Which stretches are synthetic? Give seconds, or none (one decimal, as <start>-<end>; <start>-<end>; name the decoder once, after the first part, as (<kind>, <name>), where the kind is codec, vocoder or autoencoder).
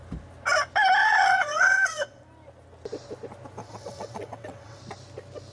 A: 1.0-2.2 (vocoder, WaveNeXt); 3.6-4.8